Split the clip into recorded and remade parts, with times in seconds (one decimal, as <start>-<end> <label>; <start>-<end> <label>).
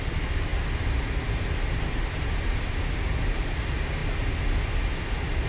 0.0-5.5 recorded